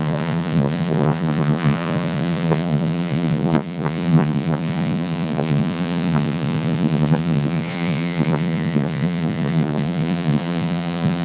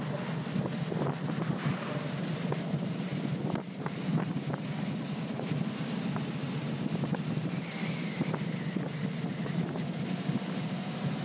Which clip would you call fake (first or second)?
first